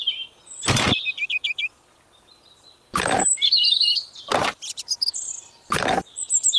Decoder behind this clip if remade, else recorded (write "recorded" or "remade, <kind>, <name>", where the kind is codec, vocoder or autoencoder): recorded